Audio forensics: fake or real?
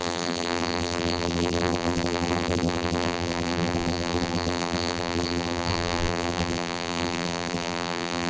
fake